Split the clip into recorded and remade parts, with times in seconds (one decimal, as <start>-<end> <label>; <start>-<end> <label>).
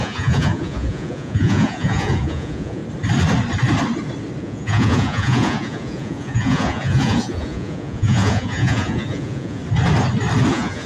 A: 0.0-2.8 remade; 2.8-4.4 recorded; 4.4-9.6 remade; 9.6-10.5 recorded; 10.5-10.9 remade